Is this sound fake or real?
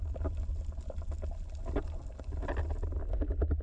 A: real